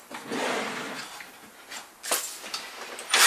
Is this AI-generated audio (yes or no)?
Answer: no